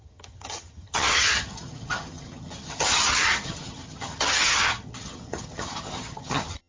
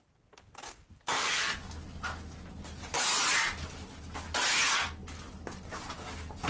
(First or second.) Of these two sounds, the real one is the second